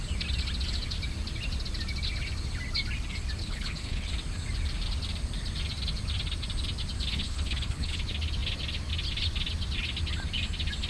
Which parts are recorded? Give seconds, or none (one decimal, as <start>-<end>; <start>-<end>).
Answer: 0.0-3.4; 4.1-7.1; 8.0-10.9

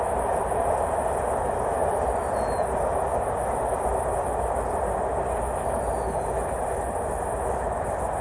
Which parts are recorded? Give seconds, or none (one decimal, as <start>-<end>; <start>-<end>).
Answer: 0.0-8.2

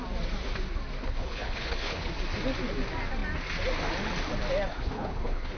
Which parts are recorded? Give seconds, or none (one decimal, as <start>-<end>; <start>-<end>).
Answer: 0.0-1.0; 2.1-4.7

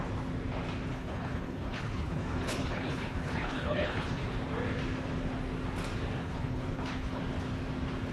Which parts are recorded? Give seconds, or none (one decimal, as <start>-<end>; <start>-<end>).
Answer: 0.0-0.9; 4.3-6.2; 7.2-8.1

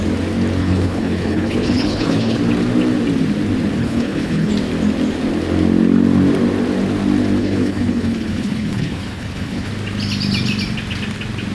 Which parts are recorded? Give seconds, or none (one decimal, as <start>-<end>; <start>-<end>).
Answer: 0.0-0.6; 2.4-3.8; 4.5-7.4; 9.7-11.5

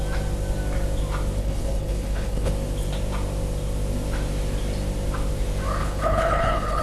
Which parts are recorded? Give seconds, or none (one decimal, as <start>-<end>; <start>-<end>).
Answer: 0.0-1.4; 2.5-5.8